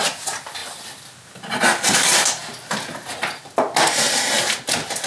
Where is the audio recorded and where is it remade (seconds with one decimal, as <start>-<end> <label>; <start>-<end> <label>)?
0.0-5.1 recorded